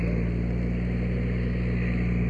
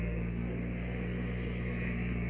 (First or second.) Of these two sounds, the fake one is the second